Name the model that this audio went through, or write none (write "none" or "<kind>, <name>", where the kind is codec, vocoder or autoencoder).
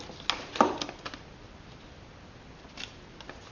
none